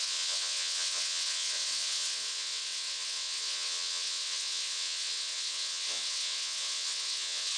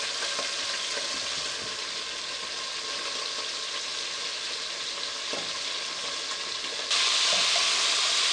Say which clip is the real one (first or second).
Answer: second